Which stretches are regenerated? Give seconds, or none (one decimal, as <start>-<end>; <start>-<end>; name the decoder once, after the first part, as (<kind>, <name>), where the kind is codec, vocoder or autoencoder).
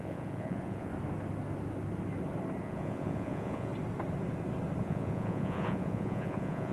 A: 0.0-0.9 (vocoder, Vocos); 2.6-3.7; 4.8-6.7